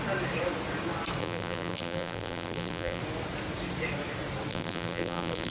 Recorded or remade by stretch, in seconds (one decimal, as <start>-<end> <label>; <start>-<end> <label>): 0.0-1.2 recorded; 1.2-3.0 remade; 3.0-4.5 recorded; 4.5-5.5 remade